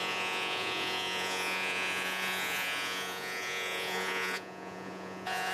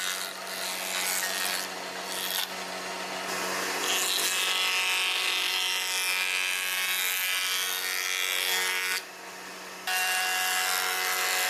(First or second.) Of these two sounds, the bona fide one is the second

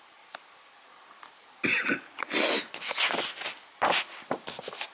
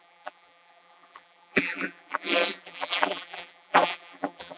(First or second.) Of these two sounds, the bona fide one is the first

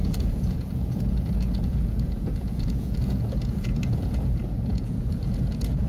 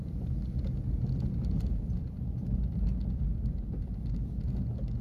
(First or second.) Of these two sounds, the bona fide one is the second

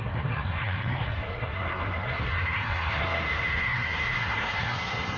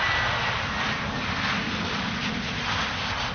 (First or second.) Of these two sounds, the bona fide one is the second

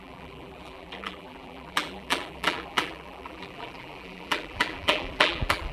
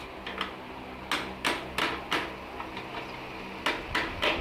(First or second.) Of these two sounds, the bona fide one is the second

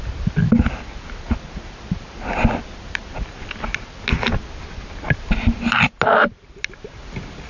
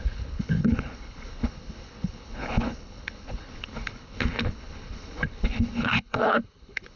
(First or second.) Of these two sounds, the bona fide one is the first